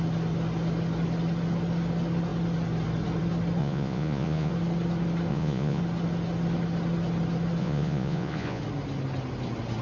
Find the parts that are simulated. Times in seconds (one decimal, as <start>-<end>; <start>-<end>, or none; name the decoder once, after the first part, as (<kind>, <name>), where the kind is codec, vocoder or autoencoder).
3.6-4.5 (vocoder, Vocos); 5.3-5.8; 7.6-8.6